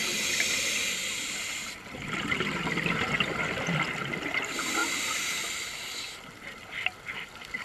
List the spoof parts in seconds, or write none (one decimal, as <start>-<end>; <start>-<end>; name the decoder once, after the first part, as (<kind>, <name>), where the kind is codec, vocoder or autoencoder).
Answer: none